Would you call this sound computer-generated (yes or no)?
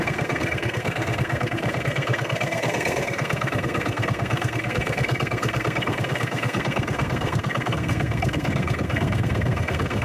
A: yes